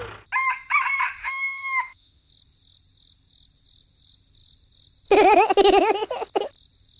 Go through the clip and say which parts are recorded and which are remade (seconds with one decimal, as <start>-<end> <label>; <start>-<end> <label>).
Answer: 0.0-1.2 recorded; 1.2-2.3 remade; 2.3-7.0 recorded